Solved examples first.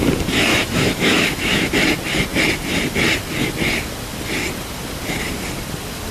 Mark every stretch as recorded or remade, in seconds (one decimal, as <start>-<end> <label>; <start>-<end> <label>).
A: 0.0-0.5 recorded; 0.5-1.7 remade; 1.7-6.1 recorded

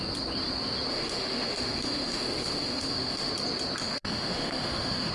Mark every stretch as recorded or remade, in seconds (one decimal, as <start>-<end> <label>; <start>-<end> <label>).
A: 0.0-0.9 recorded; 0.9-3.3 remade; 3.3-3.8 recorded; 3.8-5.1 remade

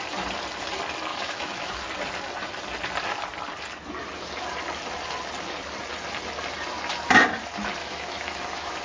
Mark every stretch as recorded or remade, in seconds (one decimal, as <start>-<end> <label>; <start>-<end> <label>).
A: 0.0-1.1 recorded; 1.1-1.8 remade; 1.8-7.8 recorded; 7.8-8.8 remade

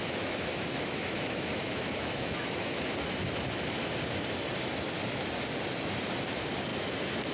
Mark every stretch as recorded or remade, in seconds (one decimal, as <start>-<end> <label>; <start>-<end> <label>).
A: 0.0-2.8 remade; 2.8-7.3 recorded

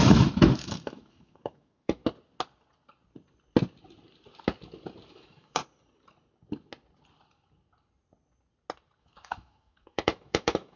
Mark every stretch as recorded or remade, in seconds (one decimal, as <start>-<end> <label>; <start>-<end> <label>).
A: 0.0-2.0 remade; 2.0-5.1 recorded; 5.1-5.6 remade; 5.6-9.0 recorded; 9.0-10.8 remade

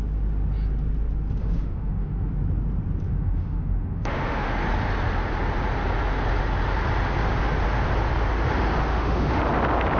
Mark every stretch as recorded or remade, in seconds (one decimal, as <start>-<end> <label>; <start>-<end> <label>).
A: 0.0-1.4 recorded; 1.4-2.3 remade; 2.3-3.1 recorded; 3.1-4.5 remade; 4.5-8.9 recorded; 8.9-9.4 remade; 9.4-10.0 recorded